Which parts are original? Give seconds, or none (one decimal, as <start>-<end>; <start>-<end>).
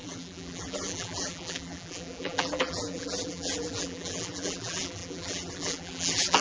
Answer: none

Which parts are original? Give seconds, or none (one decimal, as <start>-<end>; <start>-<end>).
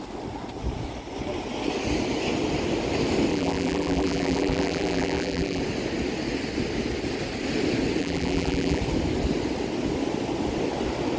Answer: 0.0-3.3; 5.6-8.0; 8.8-11.2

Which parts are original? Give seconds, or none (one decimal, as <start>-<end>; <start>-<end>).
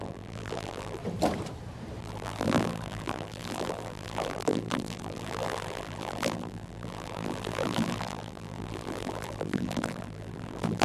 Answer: 1.0-2.0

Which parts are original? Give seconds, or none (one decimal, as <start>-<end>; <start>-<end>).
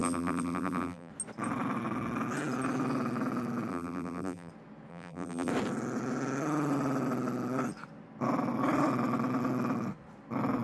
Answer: 1.1-3.7; 4.5-4.9; 5.5-10.6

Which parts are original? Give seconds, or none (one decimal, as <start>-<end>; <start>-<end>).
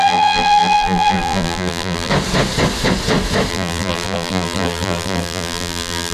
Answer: 2.1-3.5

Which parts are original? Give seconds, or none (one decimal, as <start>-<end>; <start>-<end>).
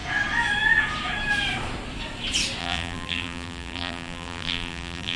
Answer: 0.0-2.6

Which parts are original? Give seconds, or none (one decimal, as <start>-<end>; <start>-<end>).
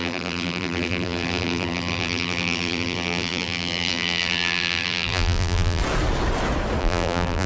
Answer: 5.8-6.8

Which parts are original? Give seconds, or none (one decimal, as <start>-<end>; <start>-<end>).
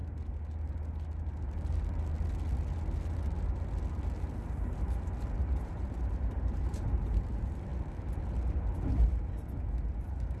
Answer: 0.0-1.2; 2.1-5.3; 7.7-10.0